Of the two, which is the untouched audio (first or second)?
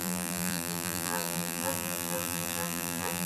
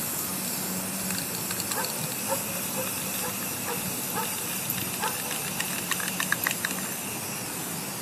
second